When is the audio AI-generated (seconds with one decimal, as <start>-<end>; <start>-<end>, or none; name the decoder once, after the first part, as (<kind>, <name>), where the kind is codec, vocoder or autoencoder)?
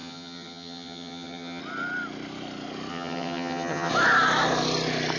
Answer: 0.0-1.6 (vocoder, HiFi-GAN); 2.9-3.9